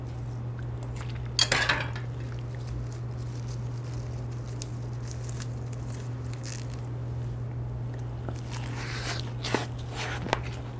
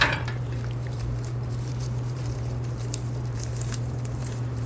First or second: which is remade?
second